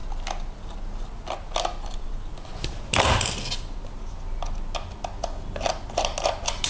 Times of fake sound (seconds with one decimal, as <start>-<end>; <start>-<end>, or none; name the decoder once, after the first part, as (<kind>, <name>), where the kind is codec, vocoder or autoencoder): none